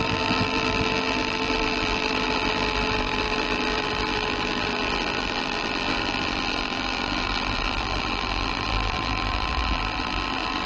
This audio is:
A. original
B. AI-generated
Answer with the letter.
B